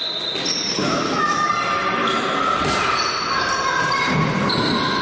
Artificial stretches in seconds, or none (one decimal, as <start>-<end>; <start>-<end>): 0.8-1.5